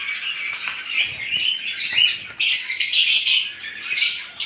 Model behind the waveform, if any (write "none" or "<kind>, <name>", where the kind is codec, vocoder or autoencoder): none